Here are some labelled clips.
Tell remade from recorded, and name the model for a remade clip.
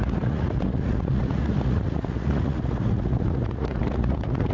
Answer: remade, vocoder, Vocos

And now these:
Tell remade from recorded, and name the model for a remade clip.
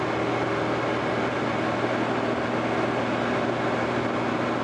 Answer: recorded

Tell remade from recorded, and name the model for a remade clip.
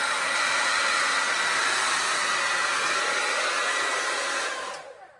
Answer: recorded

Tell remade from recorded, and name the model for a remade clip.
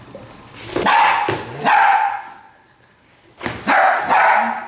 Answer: recorded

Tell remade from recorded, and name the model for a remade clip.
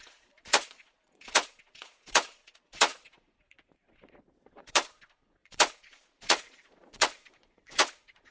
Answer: remade, vocoder, Vocos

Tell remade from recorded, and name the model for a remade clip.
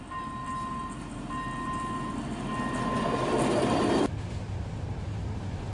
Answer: recorded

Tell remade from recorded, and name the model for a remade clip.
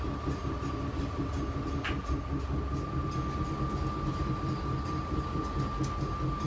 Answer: recorded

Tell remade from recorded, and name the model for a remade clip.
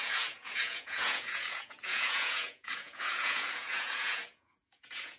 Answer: remade, vocoder, Vocos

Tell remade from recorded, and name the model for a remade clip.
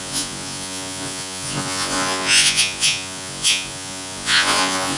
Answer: remade, vocoder, Vocos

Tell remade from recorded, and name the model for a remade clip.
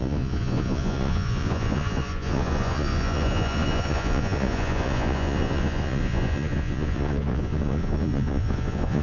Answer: remade, vocoder, Vocos